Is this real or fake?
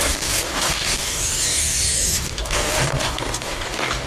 fake